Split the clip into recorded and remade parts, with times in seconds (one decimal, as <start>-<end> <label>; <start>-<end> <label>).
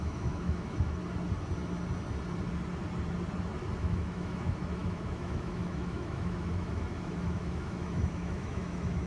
0.0-1.0 remade; 1.0-3.8 recorded; 3.8-9.1 remade